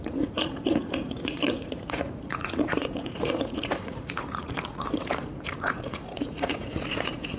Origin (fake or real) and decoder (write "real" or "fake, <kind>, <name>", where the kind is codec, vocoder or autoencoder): fake, vocoder, Vocos